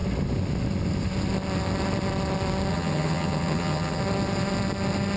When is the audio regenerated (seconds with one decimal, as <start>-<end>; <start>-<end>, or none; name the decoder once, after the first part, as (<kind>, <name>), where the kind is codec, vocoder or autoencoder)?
2.7-4.0 (vocoder, HiFi-GAN)